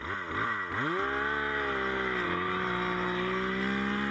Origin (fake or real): real